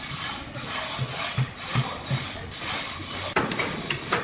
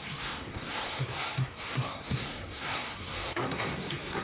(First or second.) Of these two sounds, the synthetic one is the second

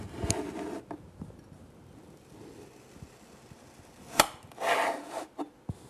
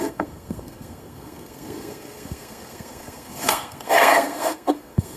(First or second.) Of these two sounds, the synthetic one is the second